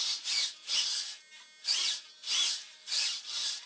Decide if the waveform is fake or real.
real